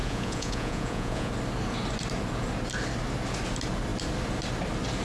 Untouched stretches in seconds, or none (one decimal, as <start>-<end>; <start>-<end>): 1.3-5.0